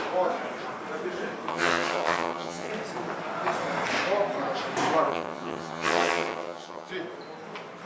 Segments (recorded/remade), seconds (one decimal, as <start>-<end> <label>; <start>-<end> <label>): 0.0-1.5 recorded; 1.5-2.7 remade; 2.7-5.1 recorded; 5.1-6.9 remade; 6.9-7.9 recorded